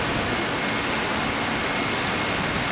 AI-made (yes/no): no